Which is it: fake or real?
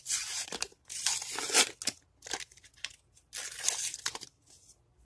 real